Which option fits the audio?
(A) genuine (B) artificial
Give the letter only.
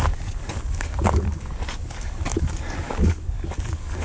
B